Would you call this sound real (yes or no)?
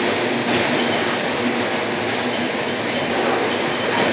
yes